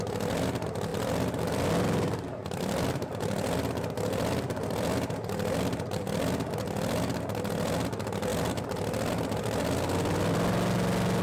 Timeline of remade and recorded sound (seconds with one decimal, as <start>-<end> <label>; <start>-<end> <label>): 0.0-0.9 recorded; 0.9-6.1 remade; 6.1-8.3 recorded; 8.3-9.1 remade; 9.1-11.2 recorded